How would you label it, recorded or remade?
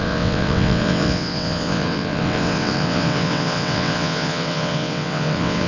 remade